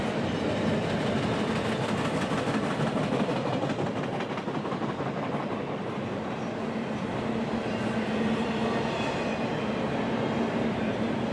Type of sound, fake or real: real